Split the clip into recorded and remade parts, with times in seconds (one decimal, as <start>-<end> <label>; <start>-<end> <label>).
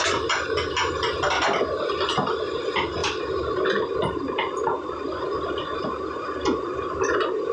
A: 0.0-7.5 recorded